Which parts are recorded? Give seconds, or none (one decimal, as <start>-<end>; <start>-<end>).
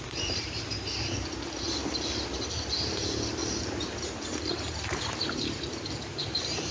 1.8-2.3